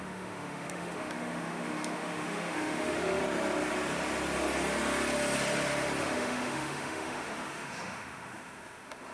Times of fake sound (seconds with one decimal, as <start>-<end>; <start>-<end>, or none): 0.0-3.2; 6.0-9.1